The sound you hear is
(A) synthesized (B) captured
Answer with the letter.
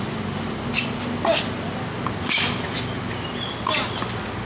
B